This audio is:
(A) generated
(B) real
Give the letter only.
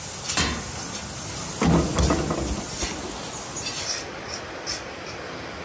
B